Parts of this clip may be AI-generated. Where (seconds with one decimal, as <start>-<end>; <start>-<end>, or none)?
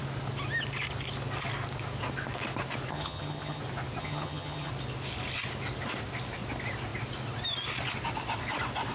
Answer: 2.9-3.6; 4.0-4.7